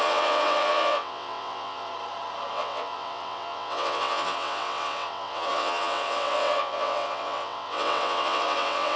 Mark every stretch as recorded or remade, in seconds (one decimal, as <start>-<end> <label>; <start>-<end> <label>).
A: 0.0-1.9 remade; 1.9-2.5 recorded; 2.5-9.0 remade